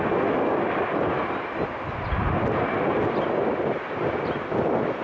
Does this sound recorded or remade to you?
recorded